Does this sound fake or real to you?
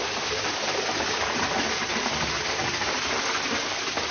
real